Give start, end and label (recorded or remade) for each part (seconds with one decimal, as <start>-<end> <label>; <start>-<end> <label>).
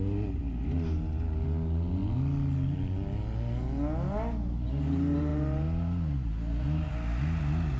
0.0-7.8 recorded